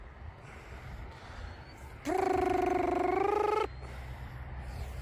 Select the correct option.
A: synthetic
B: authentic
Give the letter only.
B